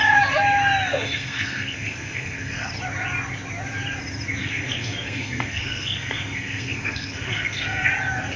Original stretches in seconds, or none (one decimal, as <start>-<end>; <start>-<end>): 0.0-0.9; 2.7-4.4; 7.9-8.4